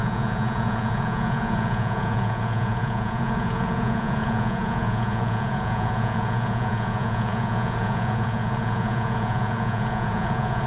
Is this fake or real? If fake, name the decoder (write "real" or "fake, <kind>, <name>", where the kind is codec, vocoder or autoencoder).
fake, vocoder, Vocos